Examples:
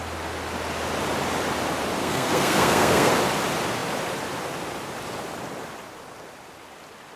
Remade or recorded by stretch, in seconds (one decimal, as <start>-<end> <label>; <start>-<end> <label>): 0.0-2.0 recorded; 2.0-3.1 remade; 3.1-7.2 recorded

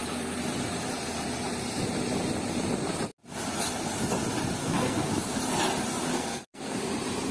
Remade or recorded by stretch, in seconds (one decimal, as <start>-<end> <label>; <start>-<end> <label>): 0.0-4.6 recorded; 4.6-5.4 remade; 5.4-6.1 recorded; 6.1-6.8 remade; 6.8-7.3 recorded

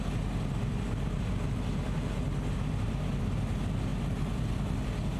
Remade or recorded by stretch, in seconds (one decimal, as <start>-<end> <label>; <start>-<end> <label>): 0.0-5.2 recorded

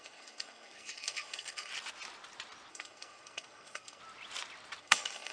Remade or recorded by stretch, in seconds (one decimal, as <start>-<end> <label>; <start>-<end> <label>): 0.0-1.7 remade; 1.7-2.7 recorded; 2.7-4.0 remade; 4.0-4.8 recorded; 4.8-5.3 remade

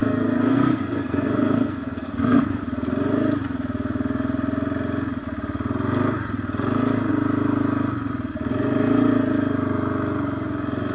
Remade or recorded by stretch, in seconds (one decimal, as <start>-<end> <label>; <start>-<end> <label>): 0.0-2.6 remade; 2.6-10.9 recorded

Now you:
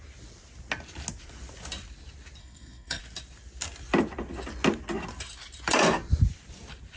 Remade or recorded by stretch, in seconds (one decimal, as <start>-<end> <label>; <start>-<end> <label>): 0.0-2.4 recorded; 2.4-3.0 remade; 3.0-7.0 recorded